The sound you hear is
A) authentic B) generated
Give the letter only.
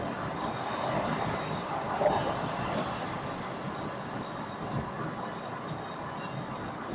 A